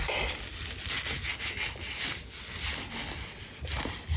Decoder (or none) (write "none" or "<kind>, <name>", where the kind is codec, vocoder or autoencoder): none